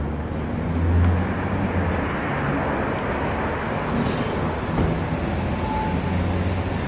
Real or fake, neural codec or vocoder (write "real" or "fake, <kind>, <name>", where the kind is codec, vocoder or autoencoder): real